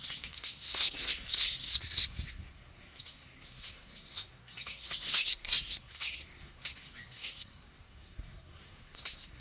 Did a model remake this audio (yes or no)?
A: yes